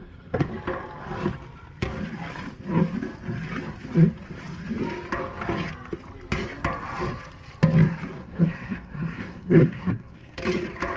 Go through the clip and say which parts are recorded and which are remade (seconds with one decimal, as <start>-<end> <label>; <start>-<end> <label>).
0.0-0.5 remade; 0.5-8.2 recorded; 8.2-10.4 remade; 10.4-11.0 recorded